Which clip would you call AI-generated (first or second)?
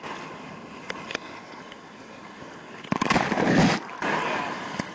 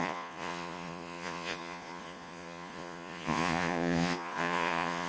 second